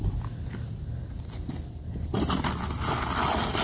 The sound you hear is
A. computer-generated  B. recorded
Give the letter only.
B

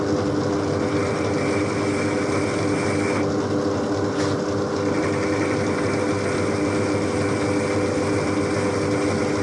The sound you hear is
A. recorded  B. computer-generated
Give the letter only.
A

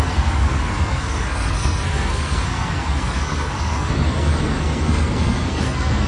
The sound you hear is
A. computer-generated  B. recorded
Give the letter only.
A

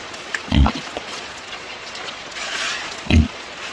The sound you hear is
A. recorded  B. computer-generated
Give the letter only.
B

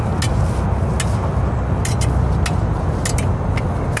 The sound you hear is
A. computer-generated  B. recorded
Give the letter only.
B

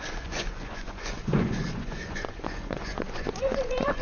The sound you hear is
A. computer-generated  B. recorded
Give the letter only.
A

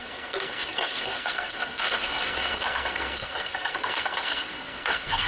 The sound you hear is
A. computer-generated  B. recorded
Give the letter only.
A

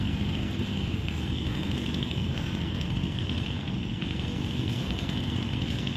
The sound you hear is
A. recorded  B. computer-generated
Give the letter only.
B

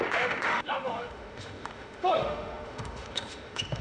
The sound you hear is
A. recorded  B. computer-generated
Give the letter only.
B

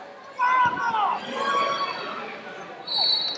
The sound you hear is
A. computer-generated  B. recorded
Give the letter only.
B